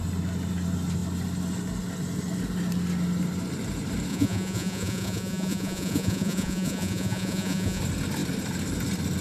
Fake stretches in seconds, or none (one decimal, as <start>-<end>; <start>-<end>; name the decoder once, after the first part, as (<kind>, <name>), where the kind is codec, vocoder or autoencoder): 4.1-7.8 (vocoder, Vocos)

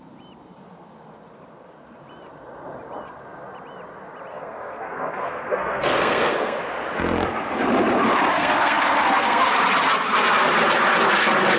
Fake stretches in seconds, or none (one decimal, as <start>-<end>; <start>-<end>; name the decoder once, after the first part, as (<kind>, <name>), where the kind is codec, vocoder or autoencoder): 4.3-6.6 (codec, SNAC); 8.4-9.5

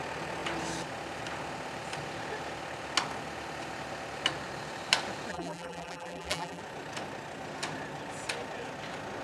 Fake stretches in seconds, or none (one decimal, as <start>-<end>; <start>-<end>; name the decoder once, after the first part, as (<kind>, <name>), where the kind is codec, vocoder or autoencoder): 5.3-6.6 (vocoder, BigVGAN v2)

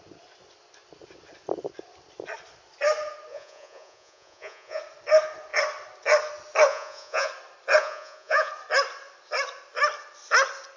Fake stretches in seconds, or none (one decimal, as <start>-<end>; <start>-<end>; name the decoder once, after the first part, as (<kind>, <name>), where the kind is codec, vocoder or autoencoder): 3.3-4.8 (vocoder, Vocos); 6.7-7.3; 7.8-8.5